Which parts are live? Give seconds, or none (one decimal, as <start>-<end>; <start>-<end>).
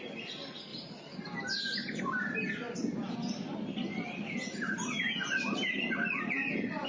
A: 0.0-0.7; 2.0-6.9